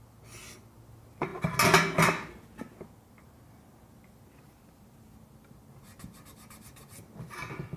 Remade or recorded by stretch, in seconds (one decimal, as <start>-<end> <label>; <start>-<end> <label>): 0.0-7.8 recorded